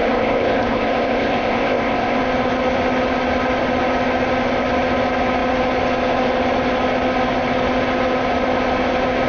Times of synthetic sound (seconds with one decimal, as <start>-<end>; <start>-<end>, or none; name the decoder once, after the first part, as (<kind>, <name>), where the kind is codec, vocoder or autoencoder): 0.0-2.2 (codec, ZipCodec)